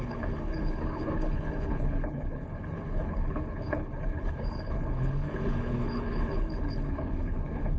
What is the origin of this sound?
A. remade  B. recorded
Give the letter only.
A